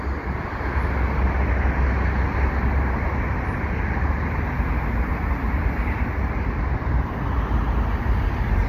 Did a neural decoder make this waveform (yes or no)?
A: no